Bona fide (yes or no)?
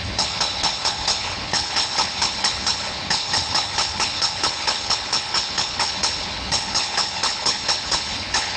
no